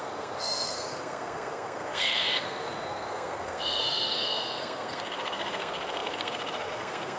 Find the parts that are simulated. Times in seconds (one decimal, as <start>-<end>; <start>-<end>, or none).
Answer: 0.0-7.2